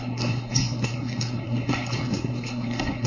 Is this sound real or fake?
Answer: fake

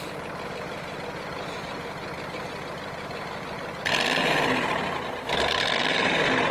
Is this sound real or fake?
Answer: real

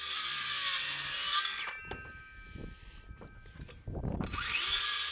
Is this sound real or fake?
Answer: real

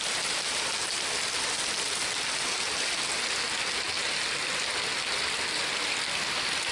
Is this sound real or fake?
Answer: real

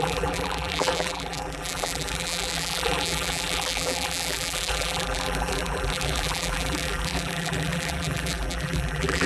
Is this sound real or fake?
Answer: fake